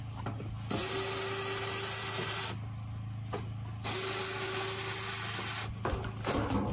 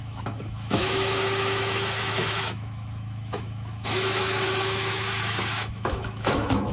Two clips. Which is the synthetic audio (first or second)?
second